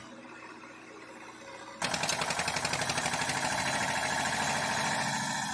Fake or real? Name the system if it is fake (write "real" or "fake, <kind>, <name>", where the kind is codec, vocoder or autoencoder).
real